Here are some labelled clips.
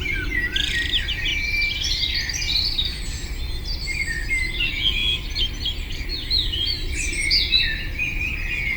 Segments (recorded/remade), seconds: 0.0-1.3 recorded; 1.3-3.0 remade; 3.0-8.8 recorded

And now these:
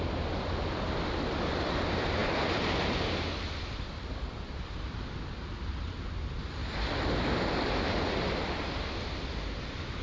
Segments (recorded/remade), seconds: 0.0-10.0 recorded

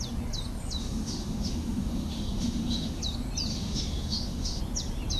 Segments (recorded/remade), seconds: 0.0-0.8 recorded; 0.8-3.0 remade; 3.0-3.5 recorded; 3.5-4.6 remade; 4.6-5.2 recorded

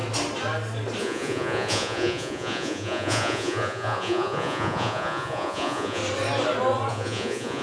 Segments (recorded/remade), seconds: 0.0-1.0 recorded; 1.0-6.0 remade; 6.0-6.9 recorded; 6.9-7.6 remade

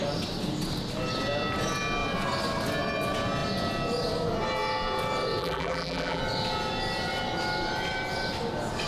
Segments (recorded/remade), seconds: 0.0-5.4 recorded; 5.4-6.2 remade; 6.2-8.9 recorded

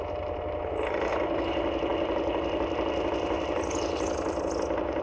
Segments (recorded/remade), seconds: 0.0-5.0 recorded

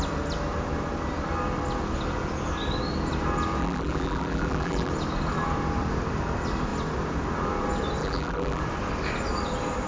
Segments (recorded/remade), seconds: 0.0-3.6 recorded; 3.6-4.9 remade; 4.9-8.0 recorded; 8.0-8.6 remade; 8.6-9.9 recorded

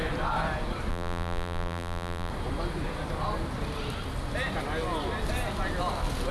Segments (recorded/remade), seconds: 0.0-0.9 recorded; 0.9-2.3 remade; 2.3-6.3 recorded